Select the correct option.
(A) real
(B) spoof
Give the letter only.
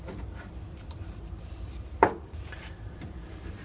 B